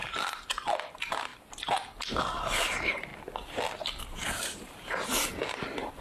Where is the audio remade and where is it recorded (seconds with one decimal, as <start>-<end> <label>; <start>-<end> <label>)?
0.0-0.9 recorded; 0.9-1.3 remade; 1.3-2.1 recorded; 2.1-3.1 remade; 3.1-4.0 recorded; 4.0-6.0 remade

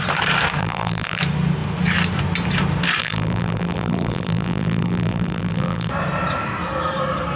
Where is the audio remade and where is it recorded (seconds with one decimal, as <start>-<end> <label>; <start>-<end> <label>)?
0.0-0.6 recorded; 0.6-1.2 remade; 1.2-3.0 recorded; 3.0-5.9 remade; 5.9-7.4 recorded

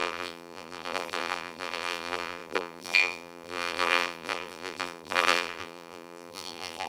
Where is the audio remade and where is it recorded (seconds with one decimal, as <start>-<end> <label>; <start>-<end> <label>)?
0.0-6.9 remade

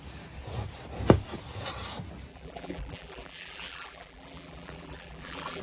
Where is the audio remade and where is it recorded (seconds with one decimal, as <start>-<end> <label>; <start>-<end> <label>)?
0.0-2.3 recorded; 2.3-5.6 remade